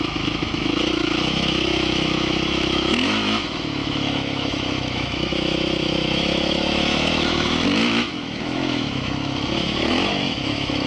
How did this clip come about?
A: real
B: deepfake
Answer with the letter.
B